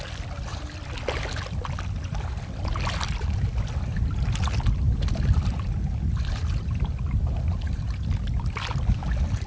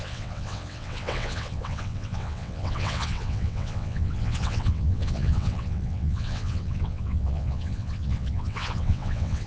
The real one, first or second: first